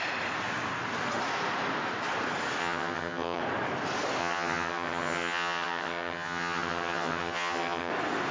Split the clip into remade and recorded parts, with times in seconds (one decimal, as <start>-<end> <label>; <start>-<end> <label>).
0.0-2.6 recorded; 2.6-3.4 remade; 3.4-4.2 recorded; 4.2-7.9 remade; 7.9-8.3 recorded